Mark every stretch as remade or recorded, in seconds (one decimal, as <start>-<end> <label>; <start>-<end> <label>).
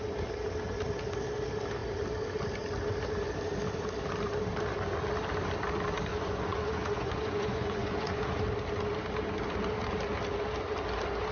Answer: 0.0-6.1 recorded; 6.1-8.2 remade; 8.2-11.3 recorded